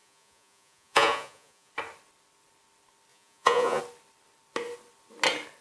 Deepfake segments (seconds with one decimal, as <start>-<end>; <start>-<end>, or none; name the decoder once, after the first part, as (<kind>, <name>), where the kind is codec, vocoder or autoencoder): 0.0-1.7 (vocoder, Vocos); 3.1-3.8

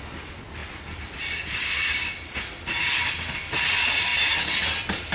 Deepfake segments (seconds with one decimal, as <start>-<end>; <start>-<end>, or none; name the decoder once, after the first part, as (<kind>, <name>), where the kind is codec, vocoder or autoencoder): none

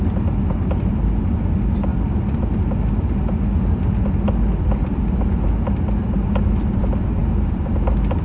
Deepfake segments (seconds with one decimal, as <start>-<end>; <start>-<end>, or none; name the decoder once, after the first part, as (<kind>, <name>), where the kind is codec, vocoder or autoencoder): none

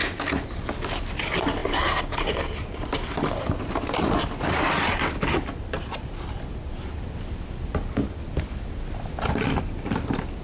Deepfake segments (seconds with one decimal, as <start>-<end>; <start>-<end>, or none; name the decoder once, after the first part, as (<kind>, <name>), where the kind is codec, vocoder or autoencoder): none

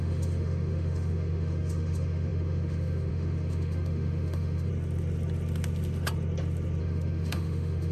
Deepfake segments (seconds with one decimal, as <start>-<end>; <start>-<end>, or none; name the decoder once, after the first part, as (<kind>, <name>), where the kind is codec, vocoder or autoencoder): 0.0-4.7 (autoencoder, DAC-VAE); 6.8-7.9

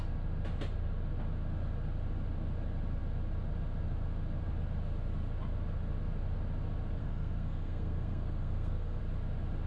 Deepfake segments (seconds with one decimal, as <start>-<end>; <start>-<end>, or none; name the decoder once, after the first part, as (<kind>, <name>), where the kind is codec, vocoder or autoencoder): 7.0-9.0 (codec, SNAC)